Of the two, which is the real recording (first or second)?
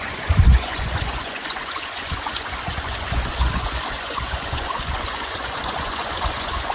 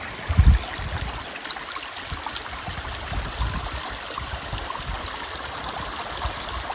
second